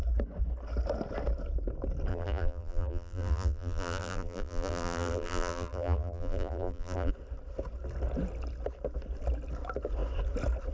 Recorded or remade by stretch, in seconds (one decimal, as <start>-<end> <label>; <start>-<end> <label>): 0.0-2.1 recorded; 2.1-7.1 remade; 7.1-10.7 recorded